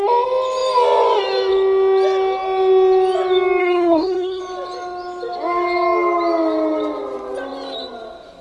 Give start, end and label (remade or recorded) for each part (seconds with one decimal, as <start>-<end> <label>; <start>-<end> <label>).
0.0-3.6 recorded; 3.6-4.4 remade; 4.4-8.4 recorded